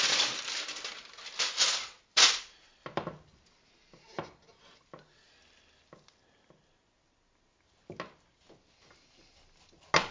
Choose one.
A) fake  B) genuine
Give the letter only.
B